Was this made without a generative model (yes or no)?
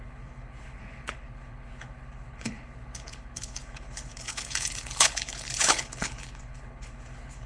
no